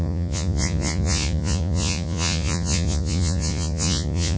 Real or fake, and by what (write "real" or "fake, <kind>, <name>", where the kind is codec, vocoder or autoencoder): fake, vocoder, Vocos